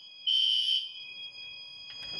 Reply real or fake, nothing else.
fake